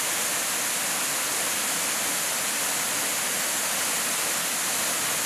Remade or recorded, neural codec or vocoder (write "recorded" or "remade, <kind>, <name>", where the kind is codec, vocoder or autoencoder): recorded